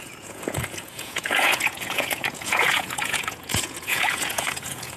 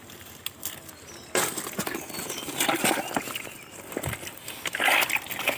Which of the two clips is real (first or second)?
second